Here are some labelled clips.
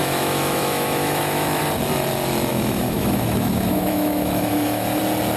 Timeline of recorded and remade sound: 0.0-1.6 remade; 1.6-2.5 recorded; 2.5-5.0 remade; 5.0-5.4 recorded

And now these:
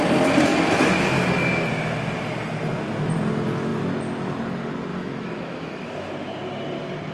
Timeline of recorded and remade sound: 0.0-4.9 recorded; 4.9-6.1 remade; 6.1-7.1 recorded